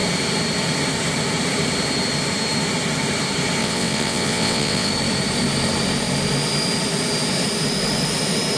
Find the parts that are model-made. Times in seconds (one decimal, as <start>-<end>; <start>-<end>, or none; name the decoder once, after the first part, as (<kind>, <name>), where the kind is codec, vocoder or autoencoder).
3.6-4.9 (vocoder, WaveNeXt)